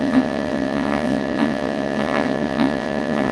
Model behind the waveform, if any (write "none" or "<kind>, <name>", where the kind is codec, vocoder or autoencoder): vocoder, WaveNeXt